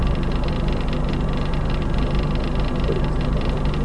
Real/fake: real